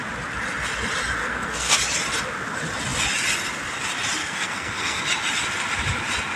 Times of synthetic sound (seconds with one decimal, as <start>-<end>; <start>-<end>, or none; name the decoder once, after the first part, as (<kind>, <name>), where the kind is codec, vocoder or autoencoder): 1.2-1.7 (codec, SNAC); 4.2-5.0